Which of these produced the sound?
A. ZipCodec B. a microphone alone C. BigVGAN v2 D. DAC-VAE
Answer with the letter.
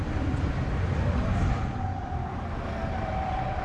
C